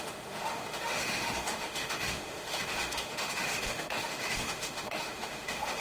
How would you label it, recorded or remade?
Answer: remade